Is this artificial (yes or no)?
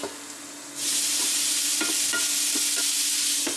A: no